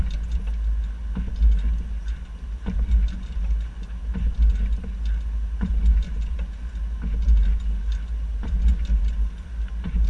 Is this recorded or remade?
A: recorded